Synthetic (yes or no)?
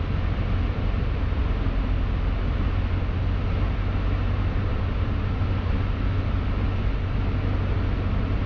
no